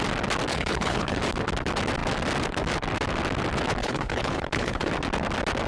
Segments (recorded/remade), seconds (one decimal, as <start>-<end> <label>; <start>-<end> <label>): 0.0-0.5 recorded; 0.5-1.2 remade; 1.2-3.8 recorded; 3.8-4.9 remade; 4.9-5.7 recorded